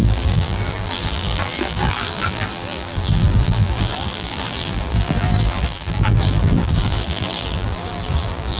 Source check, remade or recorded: remade